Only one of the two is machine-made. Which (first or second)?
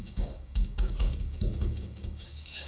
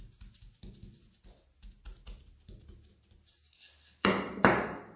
first